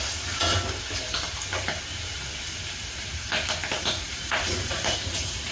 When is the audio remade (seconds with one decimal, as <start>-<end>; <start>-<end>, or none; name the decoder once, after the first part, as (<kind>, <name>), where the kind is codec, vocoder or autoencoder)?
0.0-0.5 (vocoder, Vocos); 3.8-5.5